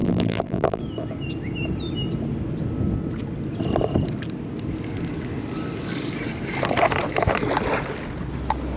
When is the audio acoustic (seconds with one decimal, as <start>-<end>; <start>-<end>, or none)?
0.8-8.8